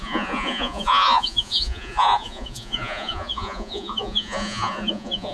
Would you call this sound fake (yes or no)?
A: yes